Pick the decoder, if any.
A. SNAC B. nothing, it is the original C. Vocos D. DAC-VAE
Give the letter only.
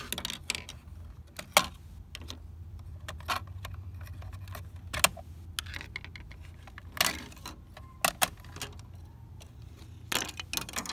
B